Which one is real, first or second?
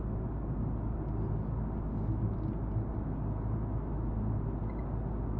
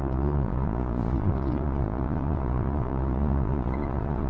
first